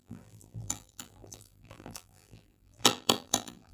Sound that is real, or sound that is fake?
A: fake